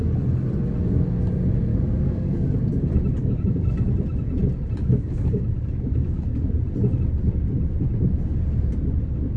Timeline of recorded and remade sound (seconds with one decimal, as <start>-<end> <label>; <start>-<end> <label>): 0.0-1.7 recorded; 1.7-2.6 remade; 2.6-3.2 recorded; 3.2-3.9 remade; 3.9-4.8 recorded; 4.8-6.5 remade; 6.5-9.4 recorded